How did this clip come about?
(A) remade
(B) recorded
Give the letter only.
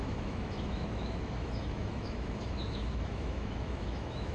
A